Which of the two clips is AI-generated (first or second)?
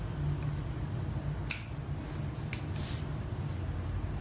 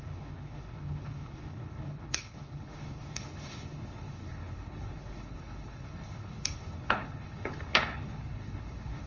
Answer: second